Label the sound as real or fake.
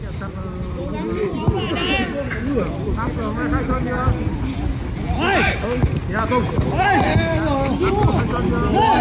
real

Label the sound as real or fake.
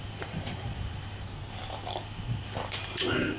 fake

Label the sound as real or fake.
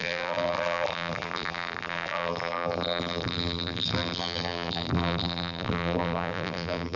fake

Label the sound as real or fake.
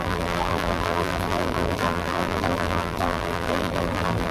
fake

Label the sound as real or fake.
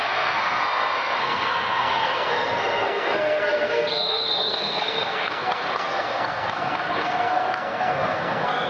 fake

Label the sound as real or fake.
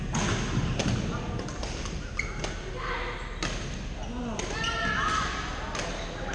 real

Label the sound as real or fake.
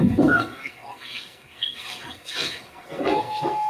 fake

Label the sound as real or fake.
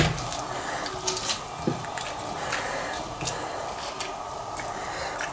real